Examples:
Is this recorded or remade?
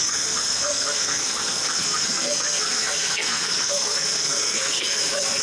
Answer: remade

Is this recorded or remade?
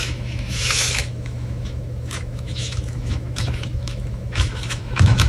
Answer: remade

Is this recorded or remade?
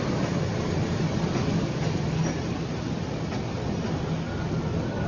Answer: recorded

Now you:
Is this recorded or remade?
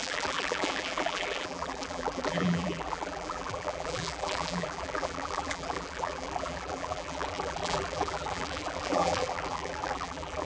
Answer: remade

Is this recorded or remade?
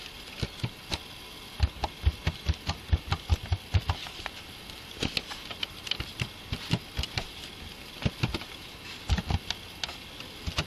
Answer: recorded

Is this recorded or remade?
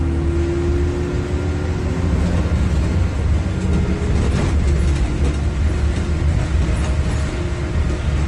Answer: recorded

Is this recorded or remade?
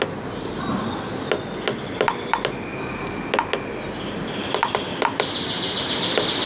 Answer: recorded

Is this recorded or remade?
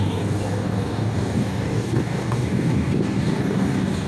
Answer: remade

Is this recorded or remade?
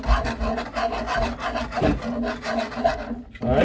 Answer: recorded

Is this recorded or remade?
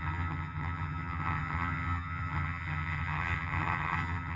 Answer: remade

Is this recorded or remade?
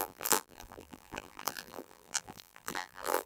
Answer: remade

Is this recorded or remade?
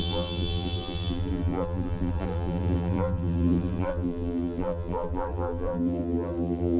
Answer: remade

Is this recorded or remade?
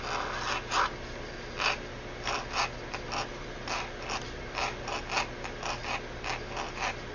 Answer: recorded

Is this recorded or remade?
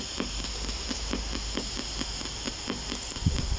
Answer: recorded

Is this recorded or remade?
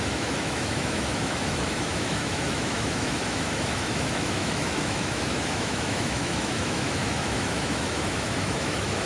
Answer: remade